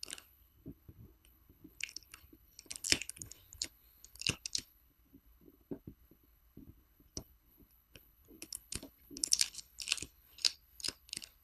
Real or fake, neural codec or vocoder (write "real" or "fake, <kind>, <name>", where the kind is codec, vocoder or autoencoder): fake, codec, HILCodec